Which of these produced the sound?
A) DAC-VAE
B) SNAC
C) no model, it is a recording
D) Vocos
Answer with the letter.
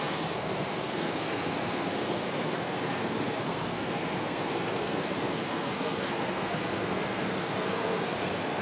B